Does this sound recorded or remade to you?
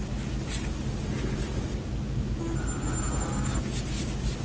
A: recorded